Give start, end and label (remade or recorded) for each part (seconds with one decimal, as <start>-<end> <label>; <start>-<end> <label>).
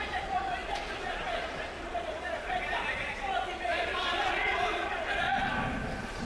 0.0-5.5 remade; 5.5-6.2 recorded